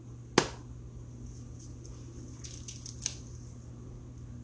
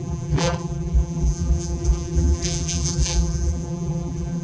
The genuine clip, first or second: first